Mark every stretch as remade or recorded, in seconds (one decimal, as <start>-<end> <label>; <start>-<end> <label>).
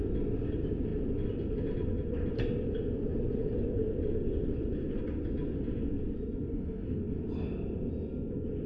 0.0-6.5 recorded; 6.5-7.0 remade; 7.0-8.7 recorded